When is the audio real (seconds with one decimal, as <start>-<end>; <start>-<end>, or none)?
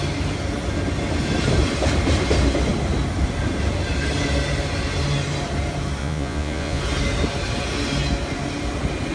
0.0-6.0; 6.8-9.1